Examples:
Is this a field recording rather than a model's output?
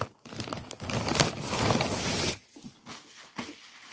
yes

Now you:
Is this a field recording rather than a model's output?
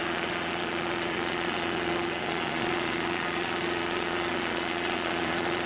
no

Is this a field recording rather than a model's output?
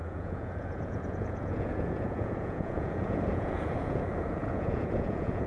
no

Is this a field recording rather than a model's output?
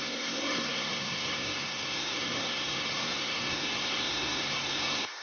no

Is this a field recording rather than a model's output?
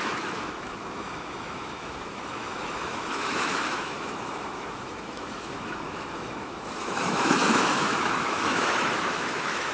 no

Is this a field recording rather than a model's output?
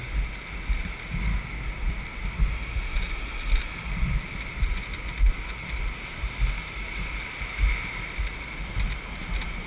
yes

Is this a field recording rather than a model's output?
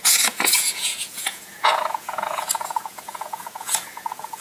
no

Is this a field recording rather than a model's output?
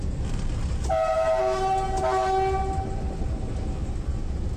yes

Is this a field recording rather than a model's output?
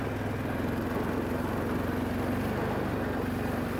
yes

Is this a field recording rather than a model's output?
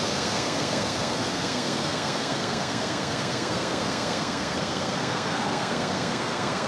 no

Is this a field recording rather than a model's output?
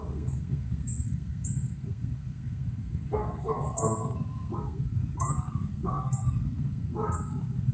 no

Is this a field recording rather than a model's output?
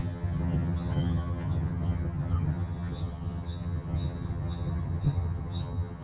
no